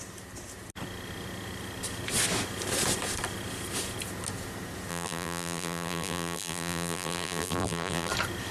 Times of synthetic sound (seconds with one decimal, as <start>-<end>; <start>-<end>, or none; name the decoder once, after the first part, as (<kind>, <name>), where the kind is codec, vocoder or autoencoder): 4.9-8.1 (vocoder, BigVGAN v2)

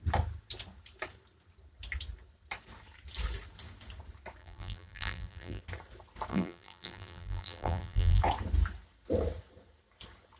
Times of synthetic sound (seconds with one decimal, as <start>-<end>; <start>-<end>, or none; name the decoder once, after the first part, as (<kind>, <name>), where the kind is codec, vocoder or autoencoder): 4.4-5.6 (vocoder, BigVGAN v2); 6.3-8.2